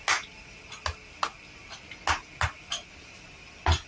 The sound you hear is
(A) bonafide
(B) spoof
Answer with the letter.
A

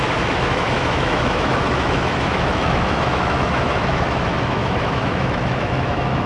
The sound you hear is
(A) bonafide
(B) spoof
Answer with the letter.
B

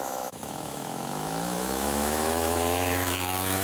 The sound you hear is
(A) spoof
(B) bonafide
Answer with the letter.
A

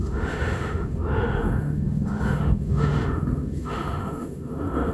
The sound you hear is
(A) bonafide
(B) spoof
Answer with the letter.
B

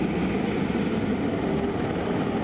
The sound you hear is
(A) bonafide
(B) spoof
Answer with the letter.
A